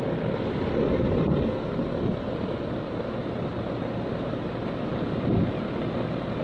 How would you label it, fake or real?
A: real